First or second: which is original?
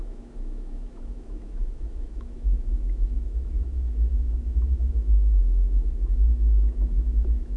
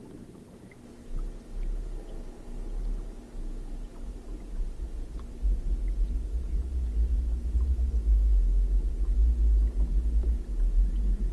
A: second